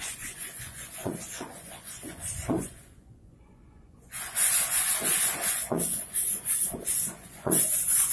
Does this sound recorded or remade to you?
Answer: remade